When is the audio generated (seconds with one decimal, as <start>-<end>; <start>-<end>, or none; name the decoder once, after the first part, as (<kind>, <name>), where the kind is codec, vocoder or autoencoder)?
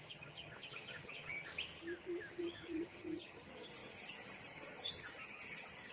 0.0-1.5 (vocoder, HiFi-GAN); 2.4-5.9